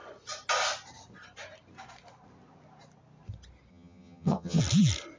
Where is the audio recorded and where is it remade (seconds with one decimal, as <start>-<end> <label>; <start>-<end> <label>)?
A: 0.0-3.7 recorded; 3.7-4.6 remade; 4.6-5.2 recorded